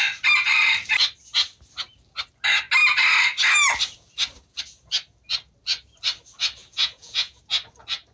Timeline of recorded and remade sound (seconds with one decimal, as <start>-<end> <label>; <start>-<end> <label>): 0.0-6.6 recorded; 6.6-7.4 remade; 7.4-8.1 recorded